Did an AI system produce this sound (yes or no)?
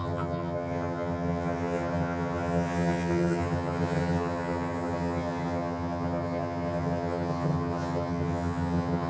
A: yes